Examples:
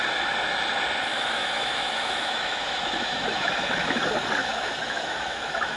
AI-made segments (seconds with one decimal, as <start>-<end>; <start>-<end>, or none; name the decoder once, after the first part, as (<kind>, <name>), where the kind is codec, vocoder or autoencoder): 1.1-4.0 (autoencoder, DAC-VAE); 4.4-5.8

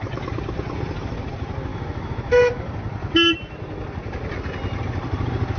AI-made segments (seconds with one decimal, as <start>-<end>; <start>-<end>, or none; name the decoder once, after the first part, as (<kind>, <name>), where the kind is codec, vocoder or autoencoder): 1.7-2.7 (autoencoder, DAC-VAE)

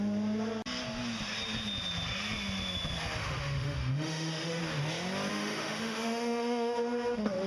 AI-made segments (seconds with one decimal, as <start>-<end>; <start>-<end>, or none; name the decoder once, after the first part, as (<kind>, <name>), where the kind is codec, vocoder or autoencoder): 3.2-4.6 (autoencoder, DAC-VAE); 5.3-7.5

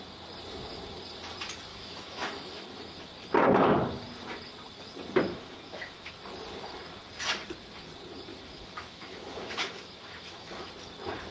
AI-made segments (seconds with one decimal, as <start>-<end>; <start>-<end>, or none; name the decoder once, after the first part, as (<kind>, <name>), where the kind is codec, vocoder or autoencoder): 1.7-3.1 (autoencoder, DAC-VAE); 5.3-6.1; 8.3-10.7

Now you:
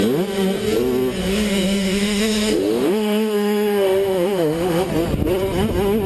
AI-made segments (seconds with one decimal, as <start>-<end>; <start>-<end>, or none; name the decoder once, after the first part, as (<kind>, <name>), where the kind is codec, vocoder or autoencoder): 1.2-4.9 (autoencoder, DAC-VAE)